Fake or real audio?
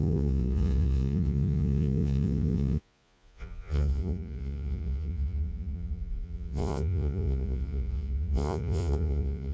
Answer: fake